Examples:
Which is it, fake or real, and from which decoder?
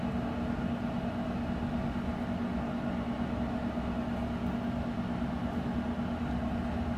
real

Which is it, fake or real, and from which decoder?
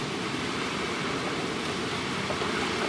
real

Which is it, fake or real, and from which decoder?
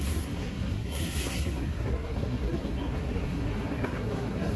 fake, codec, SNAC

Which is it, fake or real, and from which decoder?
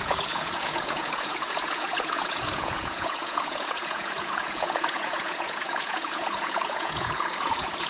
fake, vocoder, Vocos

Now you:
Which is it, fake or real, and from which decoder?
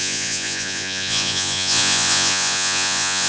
fake, vocoder, Vocos